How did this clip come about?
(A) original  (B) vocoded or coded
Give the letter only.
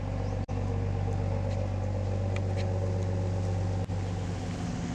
A